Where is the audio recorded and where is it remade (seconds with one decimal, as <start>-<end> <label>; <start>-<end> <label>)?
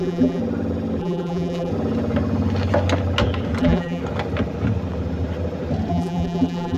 0.0-0.4 remade; 0.4-1.0 recorded; 1.0-1.7 remade; 1.7-3.6 recorded; 3.6-4.0 remade; 4.0-5.9 recorded; 5.9-6.8 remade